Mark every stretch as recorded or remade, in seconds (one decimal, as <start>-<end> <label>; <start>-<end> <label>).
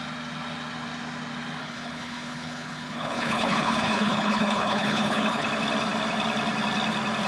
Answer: 0.0-1.6 recorded; 1.6-5.5 remade; 5.5-7.3 recorded